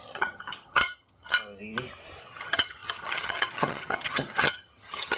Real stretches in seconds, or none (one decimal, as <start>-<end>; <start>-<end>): 1.2-2.2